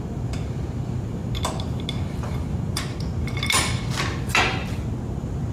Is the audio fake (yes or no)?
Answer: no